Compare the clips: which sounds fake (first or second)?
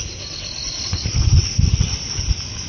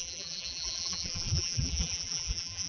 second